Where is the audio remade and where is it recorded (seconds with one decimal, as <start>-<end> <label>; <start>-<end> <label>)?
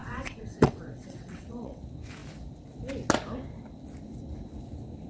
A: 0.0-1.8 remade; 1.8-5.1 recorded